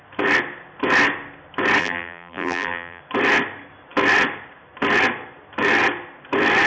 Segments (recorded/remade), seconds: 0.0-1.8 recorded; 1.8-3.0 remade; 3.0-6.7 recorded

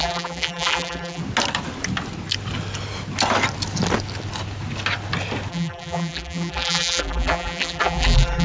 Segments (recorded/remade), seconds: 0.0-1.2 remade; 1.2-5.5 recorded; 5.5-8.4 remade

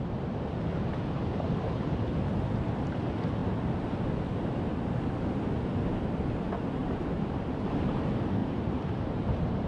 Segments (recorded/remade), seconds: 0.0-6.8 recorded; 6.8-7.9 remade; 7.9-8.4 recorded; 8.4-9.1 remade; 9.1-9.7 recorded

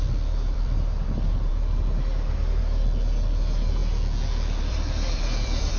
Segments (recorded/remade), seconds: 0.0-1.5 remade; 1.5-2.6 recorded; 2.6-3.8 remade; 3.8-4.6 recorded; 4.6-5.8 remade

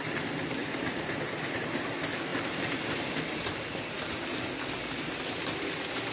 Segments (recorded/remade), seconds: 0.0-0.6 recorded; 0.6-1.8 remade; 1.8-6.1 recorded